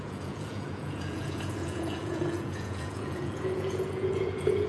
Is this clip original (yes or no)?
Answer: no